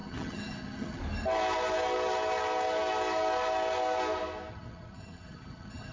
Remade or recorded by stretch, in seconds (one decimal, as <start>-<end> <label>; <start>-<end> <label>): 0.0-1.0 remade; 1.0-4.5 recorded; 4.5-5.9 remade